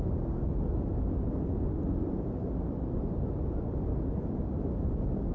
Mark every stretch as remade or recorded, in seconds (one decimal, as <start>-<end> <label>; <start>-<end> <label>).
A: 0.0-5.3 recorded